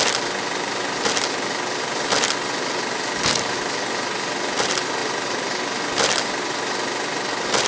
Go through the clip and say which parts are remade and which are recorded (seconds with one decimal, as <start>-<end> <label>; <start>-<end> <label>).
0.0-7.7 recorded